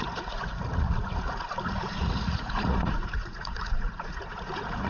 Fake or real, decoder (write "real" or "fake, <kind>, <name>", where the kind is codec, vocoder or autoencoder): fake, vocoder, Vocos